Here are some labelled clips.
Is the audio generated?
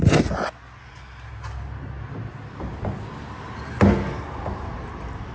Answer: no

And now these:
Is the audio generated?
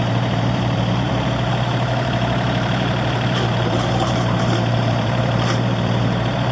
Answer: yes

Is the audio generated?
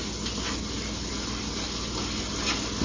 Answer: no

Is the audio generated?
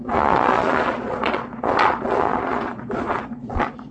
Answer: yes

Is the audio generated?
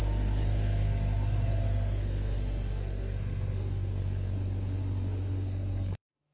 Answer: yes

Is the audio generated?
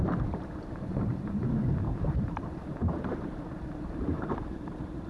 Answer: yes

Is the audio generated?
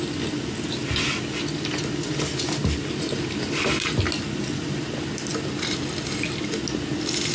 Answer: no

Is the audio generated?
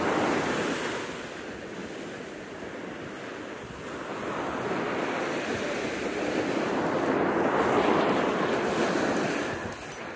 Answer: no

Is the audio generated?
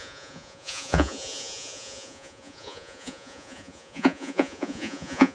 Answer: yes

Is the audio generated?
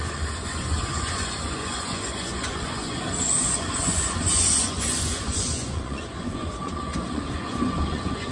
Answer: yes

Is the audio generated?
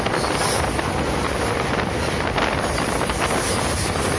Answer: no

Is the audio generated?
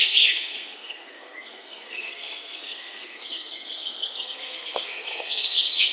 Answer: yes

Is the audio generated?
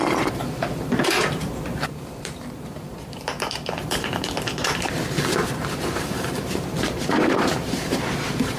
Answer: yes